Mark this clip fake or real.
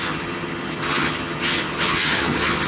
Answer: fake